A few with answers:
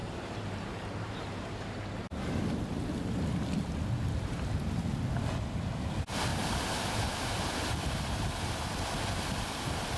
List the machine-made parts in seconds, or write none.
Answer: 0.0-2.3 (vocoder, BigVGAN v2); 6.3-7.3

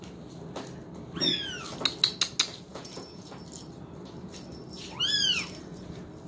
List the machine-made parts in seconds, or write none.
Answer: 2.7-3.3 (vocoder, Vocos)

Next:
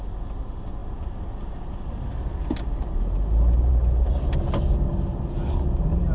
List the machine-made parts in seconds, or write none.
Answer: none

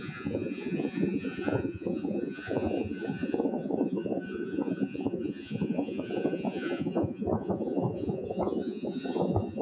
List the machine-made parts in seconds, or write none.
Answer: 0.0-9.6 (vocoder, Vocos)

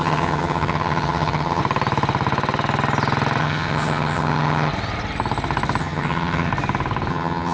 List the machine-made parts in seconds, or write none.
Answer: 0.0-1.6 (vocoder, HiFi-GAN); 3.4-4.7; 5.8-6.5; 7.1-7.5

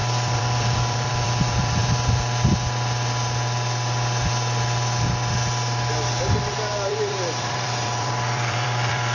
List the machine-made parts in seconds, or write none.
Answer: 0.0-1.8 (vocoder, BigVGAN v2); 6.5-9.1

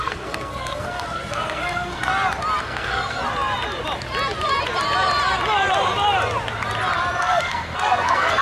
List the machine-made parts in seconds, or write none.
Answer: 0.0-2.1 (codec, SNAC); 2.6-3.2; 7.2-8.4

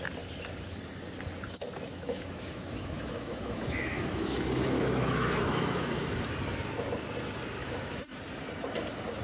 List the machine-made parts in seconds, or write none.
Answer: 1.9-6.3 (autoencoder, DAC-VAE); 7.6-8.2